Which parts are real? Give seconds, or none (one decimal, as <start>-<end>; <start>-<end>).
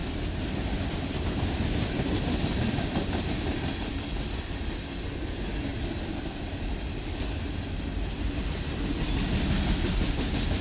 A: 0.0-10.6